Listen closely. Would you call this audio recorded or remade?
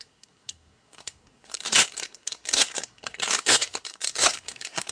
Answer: remade